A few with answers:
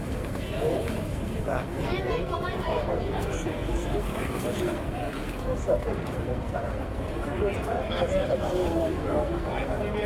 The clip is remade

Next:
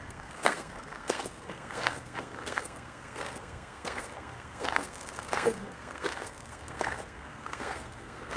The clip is remade